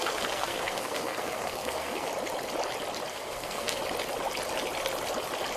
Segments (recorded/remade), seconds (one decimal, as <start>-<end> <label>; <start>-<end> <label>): 0.0-2.1 remade; 2.1-3.1 recorded; 3.1-3.8 remade; 3.8-5.6 recorded